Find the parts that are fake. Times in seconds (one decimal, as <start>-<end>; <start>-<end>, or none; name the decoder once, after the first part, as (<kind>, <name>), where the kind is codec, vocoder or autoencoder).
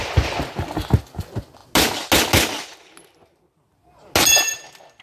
none